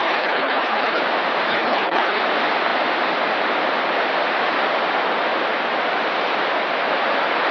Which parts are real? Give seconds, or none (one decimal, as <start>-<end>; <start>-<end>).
1.0-1.5; 2.2-7.5